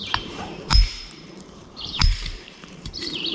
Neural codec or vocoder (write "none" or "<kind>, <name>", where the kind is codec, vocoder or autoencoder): vocoder, BigVGAN v2